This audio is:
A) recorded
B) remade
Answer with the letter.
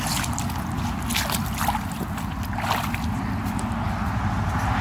A